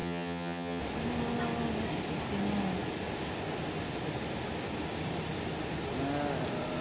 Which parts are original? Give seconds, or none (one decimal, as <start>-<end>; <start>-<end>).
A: 0.8-6.8